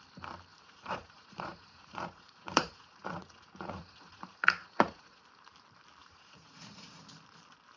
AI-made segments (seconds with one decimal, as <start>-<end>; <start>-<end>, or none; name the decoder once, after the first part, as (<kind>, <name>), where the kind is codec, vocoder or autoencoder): 0.5-5.2 (vocoder, Vocos); 6.0-7.0